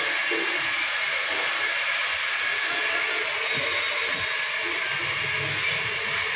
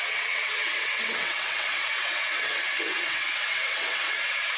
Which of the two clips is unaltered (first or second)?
first